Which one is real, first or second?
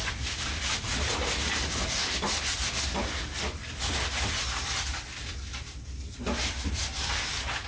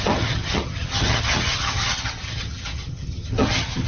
first